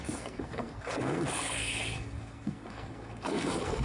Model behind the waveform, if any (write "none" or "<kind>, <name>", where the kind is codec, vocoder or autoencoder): codec, SNAC